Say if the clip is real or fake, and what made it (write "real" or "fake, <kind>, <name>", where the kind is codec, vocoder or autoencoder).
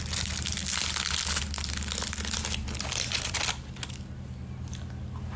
real